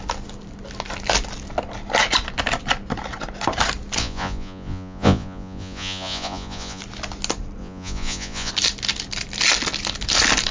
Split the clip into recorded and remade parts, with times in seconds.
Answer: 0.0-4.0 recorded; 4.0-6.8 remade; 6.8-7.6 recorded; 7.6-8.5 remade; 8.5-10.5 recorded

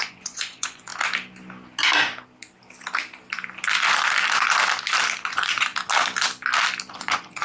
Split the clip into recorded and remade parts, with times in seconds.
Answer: 0.0-0.9 remade; 0.9-5.3 recorded; 5.3-5.7 remade; 5.7-6.9 recorded; 6.9-7.4 remade